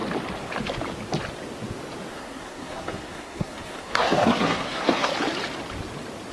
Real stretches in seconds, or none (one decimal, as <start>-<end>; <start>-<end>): 0.0-2.1; 5.1-6.3